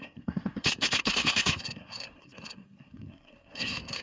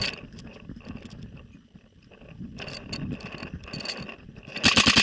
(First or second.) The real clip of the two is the second